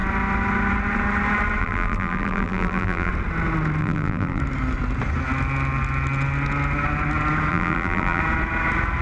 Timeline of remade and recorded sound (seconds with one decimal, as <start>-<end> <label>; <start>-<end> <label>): 0.0-1.6 recorded; 1.6-3.1 remade; 3.1-3.8 recorded; 3.8-4.4 remade; 4.4-7.5 recorded; 7.5-8.2 remade; 8.2-9.0 recorded